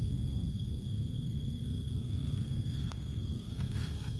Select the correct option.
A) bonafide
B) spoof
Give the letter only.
B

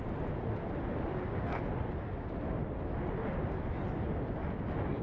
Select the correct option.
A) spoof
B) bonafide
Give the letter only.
B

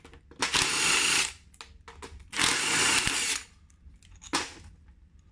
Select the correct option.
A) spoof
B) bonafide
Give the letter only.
B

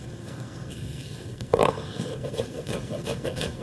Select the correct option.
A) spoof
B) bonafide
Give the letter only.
A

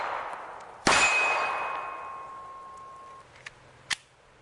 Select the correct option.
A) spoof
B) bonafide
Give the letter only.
B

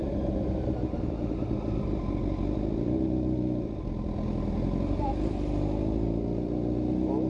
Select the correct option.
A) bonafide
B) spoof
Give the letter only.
A